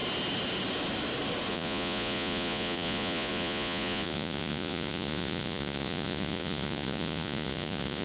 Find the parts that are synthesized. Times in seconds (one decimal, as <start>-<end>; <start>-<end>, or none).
1.5-8.0